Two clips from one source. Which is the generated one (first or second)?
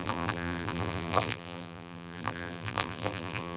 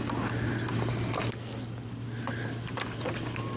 first